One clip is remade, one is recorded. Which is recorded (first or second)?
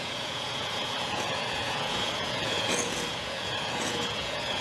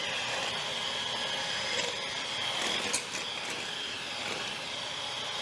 second